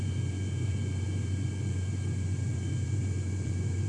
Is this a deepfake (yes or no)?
yes